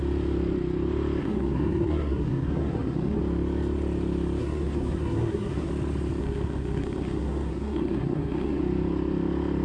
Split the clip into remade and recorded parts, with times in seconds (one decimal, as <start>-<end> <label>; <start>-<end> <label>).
0.0-1.2 recorded; 1.2-3.2 remade; 3.2-4.4 recorded; 4.4-5.7 remade; 5.7-6.2 recorded; 6.2-8.6 remade; 8.6-9.6 recorded